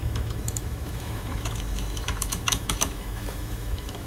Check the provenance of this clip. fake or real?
fake